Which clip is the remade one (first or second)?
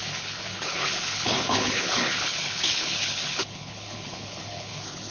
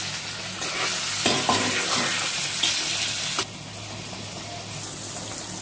first